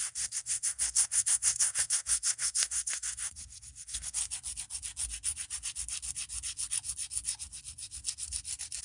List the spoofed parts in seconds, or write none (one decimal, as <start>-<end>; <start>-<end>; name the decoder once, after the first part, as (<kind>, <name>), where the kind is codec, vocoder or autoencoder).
0.0-4.2 (codec, SNAC)